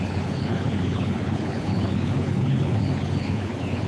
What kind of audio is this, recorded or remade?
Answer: remade